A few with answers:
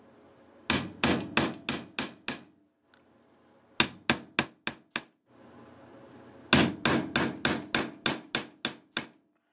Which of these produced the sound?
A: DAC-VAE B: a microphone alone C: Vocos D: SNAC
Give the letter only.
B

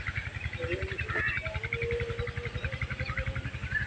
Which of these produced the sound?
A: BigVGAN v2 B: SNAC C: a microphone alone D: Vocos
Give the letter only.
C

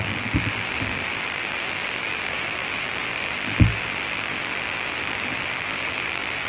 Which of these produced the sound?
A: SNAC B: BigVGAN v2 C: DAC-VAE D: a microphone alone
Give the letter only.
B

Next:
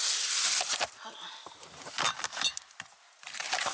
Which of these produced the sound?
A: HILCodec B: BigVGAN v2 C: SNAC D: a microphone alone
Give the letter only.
D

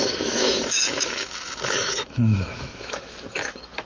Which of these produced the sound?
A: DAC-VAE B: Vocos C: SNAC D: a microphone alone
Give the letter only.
A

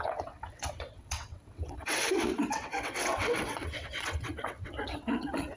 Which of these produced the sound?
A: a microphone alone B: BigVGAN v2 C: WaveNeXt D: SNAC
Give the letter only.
C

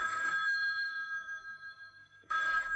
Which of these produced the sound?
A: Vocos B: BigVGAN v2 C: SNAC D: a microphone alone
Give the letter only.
C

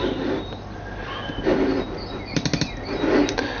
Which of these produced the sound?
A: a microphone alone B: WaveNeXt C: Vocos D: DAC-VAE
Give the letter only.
A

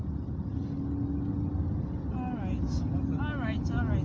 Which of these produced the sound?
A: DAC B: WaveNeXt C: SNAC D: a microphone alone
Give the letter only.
D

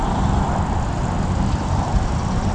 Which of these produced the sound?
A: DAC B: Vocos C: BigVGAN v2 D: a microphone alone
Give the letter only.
D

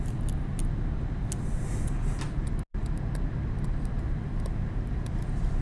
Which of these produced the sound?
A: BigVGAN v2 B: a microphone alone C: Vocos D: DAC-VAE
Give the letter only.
B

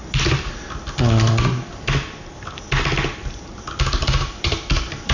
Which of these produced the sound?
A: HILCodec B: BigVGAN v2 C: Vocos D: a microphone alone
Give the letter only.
D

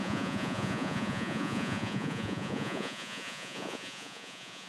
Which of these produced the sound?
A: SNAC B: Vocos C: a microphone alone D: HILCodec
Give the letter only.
B